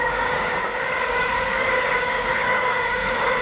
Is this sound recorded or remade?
remade